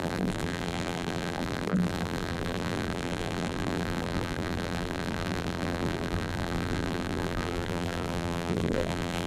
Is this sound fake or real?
fake